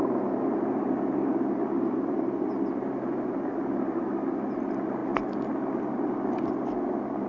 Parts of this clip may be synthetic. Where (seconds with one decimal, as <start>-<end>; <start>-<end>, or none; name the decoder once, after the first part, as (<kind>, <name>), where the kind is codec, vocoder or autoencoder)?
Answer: none